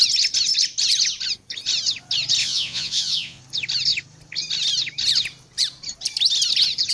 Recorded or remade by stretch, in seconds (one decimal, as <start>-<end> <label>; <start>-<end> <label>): 0.0-2.4 recorded; 2.4-3.4 remade; 3.4-6.9 recorded